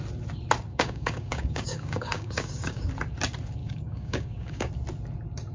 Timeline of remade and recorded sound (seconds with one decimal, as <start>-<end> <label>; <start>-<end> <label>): 0.0-0.7 recorded; 0.7-2.9 remade; 2.9-3.6 recorded; 3.6-4.7 remade; 4.7-5.5 recorded